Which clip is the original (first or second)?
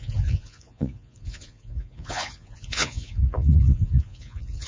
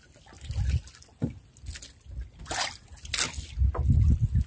second